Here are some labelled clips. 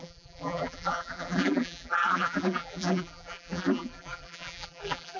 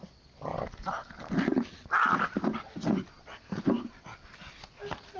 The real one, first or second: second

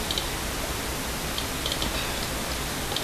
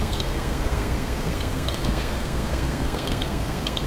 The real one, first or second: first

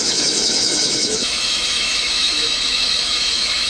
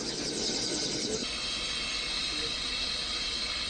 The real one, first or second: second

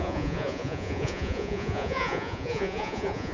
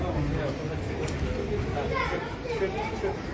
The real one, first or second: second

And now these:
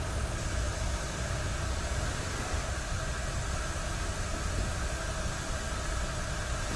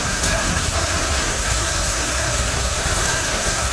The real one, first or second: first